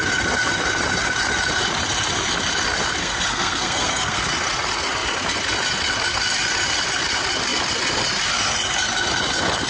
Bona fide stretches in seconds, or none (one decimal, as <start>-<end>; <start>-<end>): 0.0-3.0; 4.2-9.7

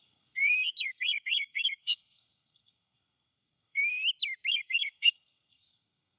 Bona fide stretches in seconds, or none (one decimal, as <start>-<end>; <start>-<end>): 3.8-4.5

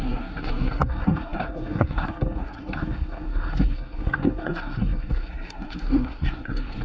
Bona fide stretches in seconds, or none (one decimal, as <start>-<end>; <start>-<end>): none